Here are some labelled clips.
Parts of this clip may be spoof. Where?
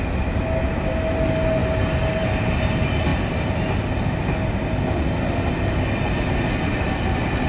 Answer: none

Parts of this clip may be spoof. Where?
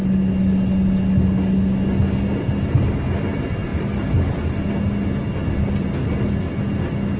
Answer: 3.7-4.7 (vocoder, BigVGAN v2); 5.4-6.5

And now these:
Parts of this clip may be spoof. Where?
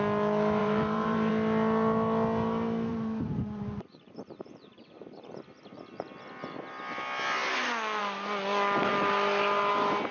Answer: 0.6-1.3 (vocoder, BigVGAN v2); 2.9-5.0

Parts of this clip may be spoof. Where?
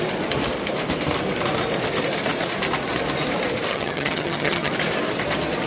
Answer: 3.7-4.7 (vocoder, HiFi-GAN)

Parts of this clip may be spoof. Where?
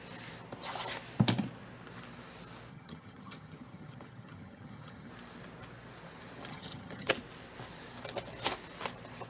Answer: 2.7-5.1 (vocoder, HiFi-GAN); 6.5-7.1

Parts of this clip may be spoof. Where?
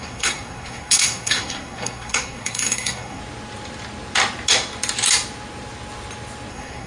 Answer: 0.0-3.2 (codec, SNAC); 6.5-6.9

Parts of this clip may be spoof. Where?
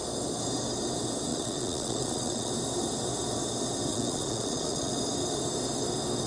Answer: 1.3-2.5 (vocoder, Vocos); 3.9-4.9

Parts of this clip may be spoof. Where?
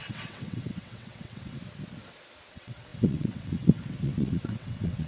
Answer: 0.0-1.6 (vocoder, WaveNeXt); 2.5-5.1